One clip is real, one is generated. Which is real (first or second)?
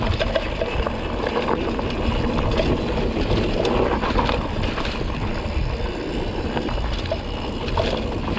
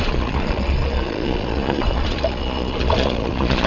first